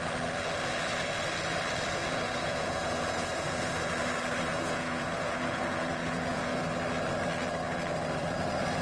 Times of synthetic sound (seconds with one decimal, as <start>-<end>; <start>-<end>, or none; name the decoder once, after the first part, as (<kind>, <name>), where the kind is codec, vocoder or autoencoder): 2.0-3.7 (vocoder, Vocos); 4.5-6.6